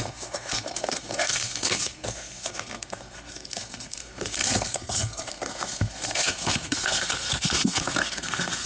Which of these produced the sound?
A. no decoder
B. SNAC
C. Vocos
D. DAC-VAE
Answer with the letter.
B